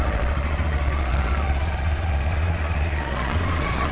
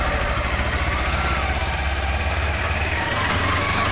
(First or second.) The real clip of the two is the second